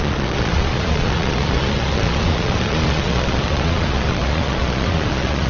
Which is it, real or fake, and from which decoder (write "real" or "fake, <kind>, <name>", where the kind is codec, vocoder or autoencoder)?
fake, vocoder, Vocos